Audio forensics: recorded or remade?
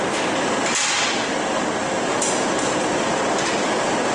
recorded